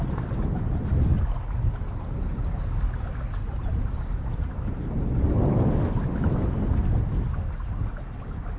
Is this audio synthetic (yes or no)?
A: no